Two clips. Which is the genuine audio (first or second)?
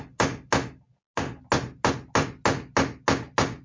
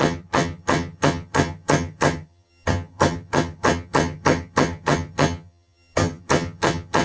first